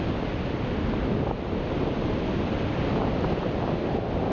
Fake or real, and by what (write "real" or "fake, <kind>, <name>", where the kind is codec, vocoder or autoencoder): real